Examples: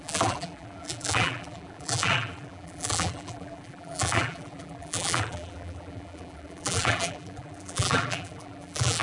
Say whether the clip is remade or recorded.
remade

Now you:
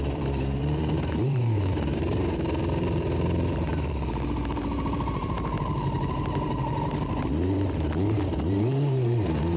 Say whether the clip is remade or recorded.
remade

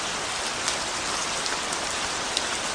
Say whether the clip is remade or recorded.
remade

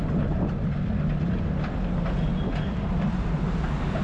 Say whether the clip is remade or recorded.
recorded